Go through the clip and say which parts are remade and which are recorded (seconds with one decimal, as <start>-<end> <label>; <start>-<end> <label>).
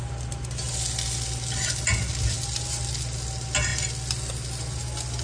0.0-5.2 recorded